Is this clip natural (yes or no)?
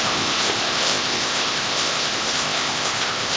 no